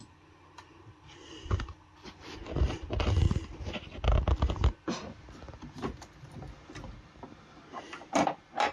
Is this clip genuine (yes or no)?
yes